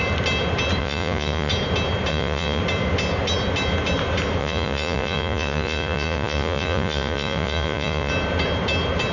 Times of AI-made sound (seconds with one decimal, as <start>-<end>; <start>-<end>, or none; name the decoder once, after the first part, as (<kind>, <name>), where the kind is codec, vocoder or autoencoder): 0.8-1.5 (vocoder, Vocos); 2.1-2.6; 4.4-8.1